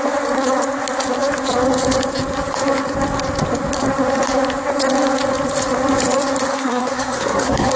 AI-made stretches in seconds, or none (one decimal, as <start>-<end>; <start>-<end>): 6.5-7.8